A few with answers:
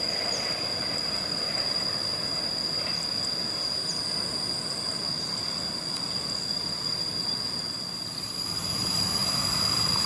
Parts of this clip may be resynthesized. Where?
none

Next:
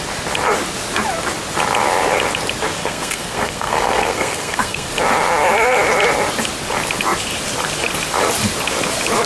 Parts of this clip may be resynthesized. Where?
2.8-4.9 (codec, SNAC)

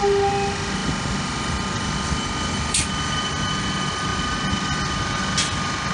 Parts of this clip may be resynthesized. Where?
none

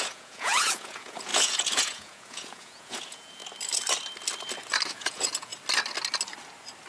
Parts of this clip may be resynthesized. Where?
0.0-3.4 (vocoder, Vocos); 4.9-5.5